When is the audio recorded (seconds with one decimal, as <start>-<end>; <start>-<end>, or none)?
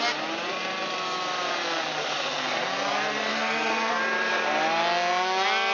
0.0-3.3; 3.9-5.7